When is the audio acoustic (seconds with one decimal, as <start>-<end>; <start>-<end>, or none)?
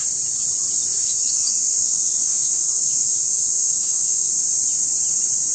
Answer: 0.0-1.0; 4.3-5.5